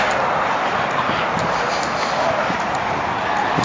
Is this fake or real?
real